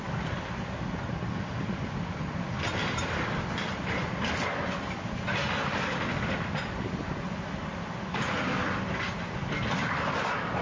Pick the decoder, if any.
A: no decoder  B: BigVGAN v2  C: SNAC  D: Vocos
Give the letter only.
A